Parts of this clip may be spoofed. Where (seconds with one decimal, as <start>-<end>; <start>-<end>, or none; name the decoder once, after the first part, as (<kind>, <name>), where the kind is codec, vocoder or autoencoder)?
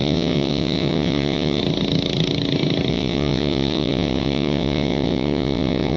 0.0-1.6 (vocoder, WaveNeXt); 2.9-6.0